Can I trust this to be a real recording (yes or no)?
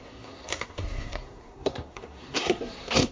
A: no